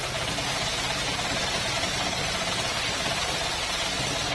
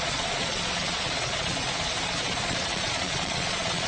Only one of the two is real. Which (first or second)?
first